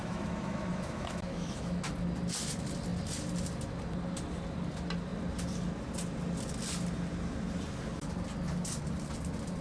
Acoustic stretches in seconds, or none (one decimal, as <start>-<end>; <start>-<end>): 1.8-9.6